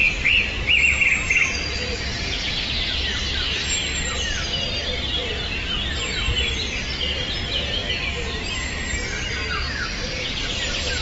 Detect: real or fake real